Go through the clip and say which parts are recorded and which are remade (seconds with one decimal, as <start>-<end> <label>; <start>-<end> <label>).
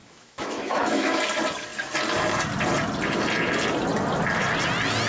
0.0-1.2 remade; 1.2-5.1 recorded